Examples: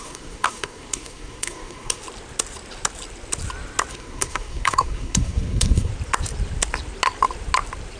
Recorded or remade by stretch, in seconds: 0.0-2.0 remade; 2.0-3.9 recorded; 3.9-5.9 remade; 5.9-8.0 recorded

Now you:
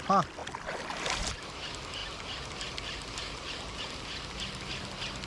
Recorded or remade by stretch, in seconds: 0.0-5.3 recorded

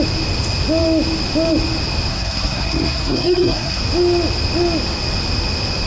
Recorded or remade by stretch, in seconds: 0.0-2.1 recorded; 2.1-3.8 remade; 3.8-5.9 recorded

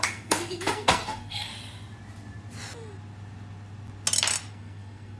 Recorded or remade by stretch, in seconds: 0.0-1.5 remade; 1.5-4.5 recorded; 4.5-5.2 remade